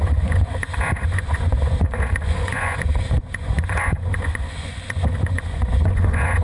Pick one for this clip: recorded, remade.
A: remade